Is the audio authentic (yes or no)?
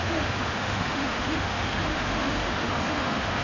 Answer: no